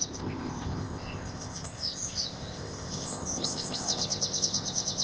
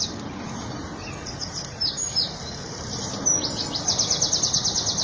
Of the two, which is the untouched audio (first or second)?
second